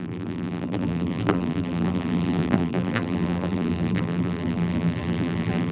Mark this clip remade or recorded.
remade